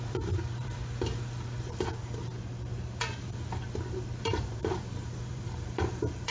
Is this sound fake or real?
fake